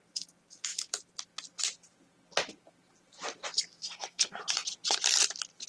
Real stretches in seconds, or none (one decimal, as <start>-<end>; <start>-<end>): 0.0-3.8; 4.4-5.7